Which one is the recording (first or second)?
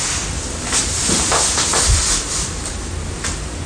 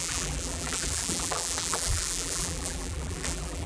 first